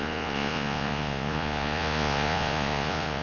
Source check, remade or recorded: remade